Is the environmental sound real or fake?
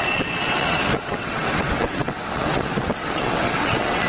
fake